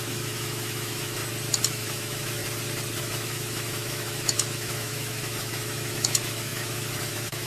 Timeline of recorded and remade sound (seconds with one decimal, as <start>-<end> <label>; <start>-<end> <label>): 0.0-1.2 remade; 1.2-1.7 recorded; 1.7-2.4 remade; 2.4-3.0 recorded; 3.0-7.5 remade